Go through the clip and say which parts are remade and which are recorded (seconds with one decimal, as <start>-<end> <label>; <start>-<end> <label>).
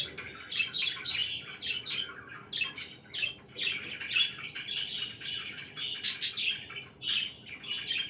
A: 0.0-8.1 recorded